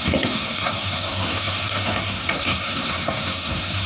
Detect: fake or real fake